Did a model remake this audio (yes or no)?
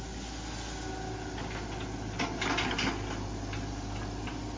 no